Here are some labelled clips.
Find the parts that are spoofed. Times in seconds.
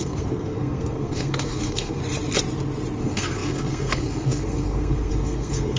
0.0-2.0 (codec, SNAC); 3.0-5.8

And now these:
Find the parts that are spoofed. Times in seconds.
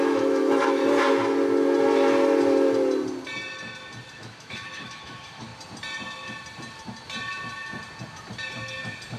0.0-0.8 (autoencoder, DAC-VAE); 4.1-5.5